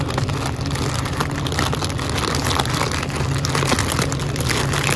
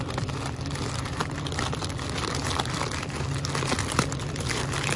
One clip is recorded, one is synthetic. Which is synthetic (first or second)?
second